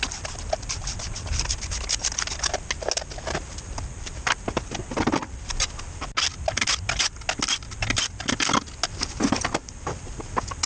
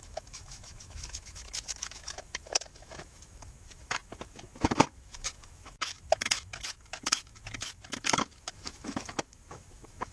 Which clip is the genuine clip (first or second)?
first